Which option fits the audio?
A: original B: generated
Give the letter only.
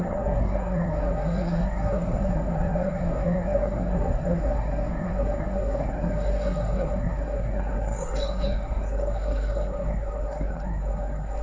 B